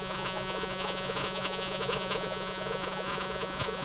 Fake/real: fake